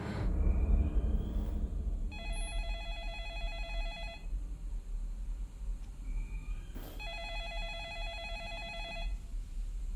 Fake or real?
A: real